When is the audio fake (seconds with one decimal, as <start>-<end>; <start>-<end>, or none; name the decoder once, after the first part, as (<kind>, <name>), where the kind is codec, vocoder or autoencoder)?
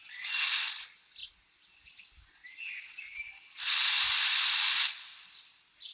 none